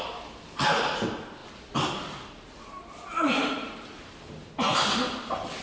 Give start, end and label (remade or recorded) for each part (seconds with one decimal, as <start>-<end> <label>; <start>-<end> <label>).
0.0-5.6 recorded